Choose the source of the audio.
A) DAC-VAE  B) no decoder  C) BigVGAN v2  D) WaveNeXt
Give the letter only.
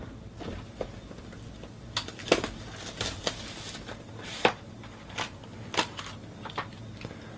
B